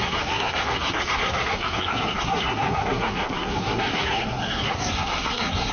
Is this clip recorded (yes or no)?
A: no